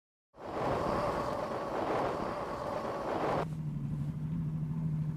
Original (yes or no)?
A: yes